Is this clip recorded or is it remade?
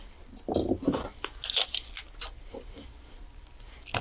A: recorded